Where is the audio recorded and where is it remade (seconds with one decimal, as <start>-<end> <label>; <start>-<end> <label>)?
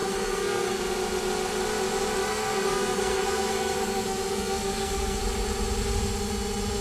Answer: 0.0-0.8 remade; 0.8-2.3 recorded; 2.3-5.2 remade; 5.2-6.8 recorded